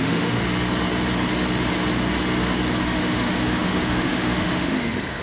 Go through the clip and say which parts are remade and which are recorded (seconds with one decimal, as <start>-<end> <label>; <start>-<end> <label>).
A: 0.0-0.4 remade; 0.4-2.8 recorded; 2.8-5.2 remade